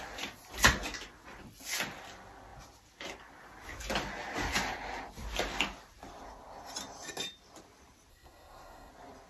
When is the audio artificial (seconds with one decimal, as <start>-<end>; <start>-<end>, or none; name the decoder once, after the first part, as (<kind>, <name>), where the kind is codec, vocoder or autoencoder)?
8.1-8.9 (codec, SNAC)